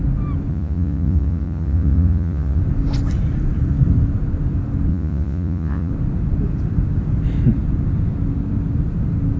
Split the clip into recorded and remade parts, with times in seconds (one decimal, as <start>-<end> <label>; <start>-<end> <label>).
0.0-0.5 recorded; 0.5-2.6 remade; 2.6-4.9 recorded; 4.9-5.9 remade; 5.9-9.4 recorded